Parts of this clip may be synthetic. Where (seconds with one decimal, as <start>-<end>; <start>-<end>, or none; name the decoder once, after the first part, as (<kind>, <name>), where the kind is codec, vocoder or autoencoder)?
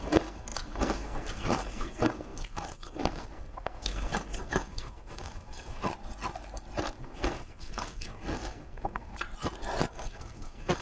0.0-5.8 (codec, SNAC); 7.0-9.1; 9.9-10.8